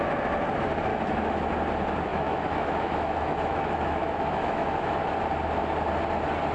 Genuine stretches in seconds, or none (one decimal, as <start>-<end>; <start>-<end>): 0.0-0.9; 1.5-2.1; 5.1-6.5